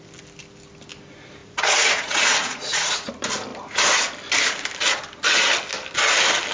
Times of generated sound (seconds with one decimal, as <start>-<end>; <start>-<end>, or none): 1.4-3.1